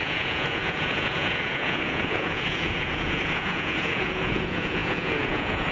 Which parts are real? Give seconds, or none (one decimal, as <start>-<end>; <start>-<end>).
none